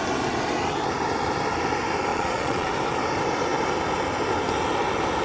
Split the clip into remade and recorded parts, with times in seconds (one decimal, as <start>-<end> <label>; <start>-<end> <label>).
0.0-2.1 recorded; 2.1-2.7 remade; 2.7-5.2 recorded